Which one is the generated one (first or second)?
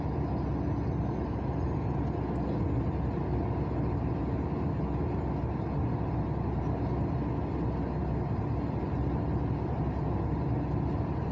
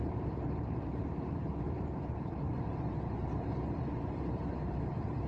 second